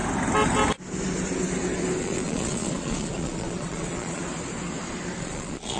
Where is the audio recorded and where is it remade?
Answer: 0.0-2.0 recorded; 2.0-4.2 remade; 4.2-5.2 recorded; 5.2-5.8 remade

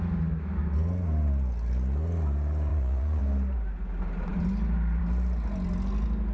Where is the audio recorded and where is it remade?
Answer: 0.0-2.7 recorded; 2.7-3.2 remade; 3.2-6.3 recorded

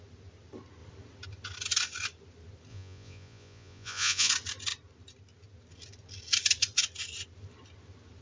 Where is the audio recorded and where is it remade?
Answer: 0.0-2.7 recorded; 2.7-4.3 remade; 4.3-8.2 recorded

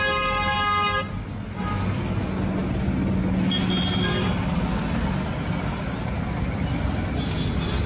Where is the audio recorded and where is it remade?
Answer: 0.0-7.9 recorded

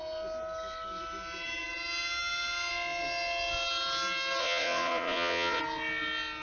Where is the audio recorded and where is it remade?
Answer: 0.0-4.4 recorded; 4.4-5.6 remade; 5.6-6.4 recorded

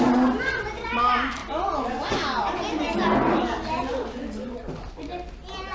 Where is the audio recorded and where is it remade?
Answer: 0.0-5.7 recorded

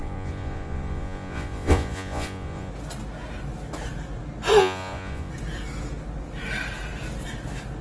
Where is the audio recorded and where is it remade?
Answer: 0.0-2.7 remade; 2.7-4.6 recorded; 4.6-5.3 remade; 5.3-7.8 recorded

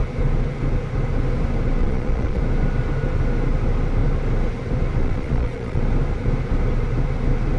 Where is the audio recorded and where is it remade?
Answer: 0.0-1.8 recorded; 1.8-2.4 remade; 2.4-5.0 recorded; 5.0-5.8 remade; 5.8-7.6 recorded